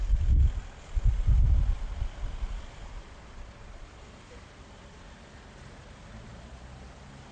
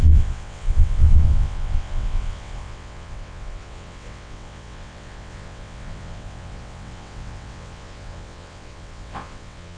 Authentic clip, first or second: first